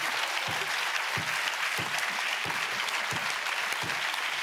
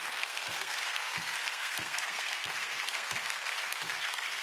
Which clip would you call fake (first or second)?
second